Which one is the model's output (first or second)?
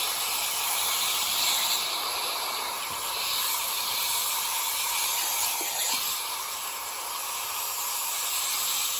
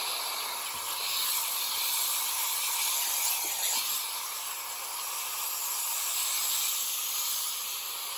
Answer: first